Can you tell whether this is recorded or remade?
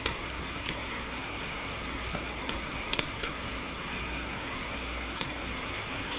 remade